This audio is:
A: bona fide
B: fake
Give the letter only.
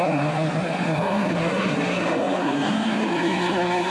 B